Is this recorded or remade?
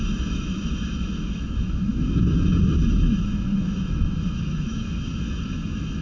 remade